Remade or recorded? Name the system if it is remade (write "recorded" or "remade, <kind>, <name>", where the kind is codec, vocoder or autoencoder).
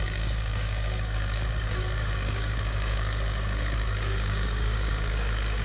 remade, codec, DAC